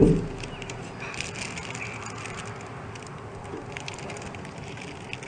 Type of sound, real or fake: real